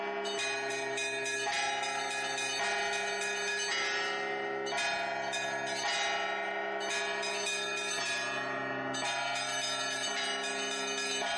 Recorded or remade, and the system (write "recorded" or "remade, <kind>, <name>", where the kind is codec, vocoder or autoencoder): recorded